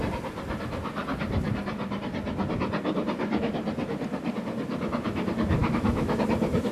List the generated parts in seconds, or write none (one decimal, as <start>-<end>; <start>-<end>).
5.6-6.2